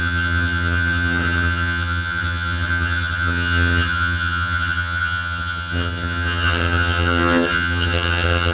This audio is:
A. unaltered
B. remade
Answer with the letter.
B